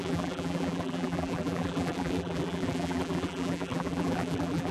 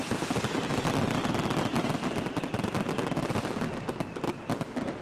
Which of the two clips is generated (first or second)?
first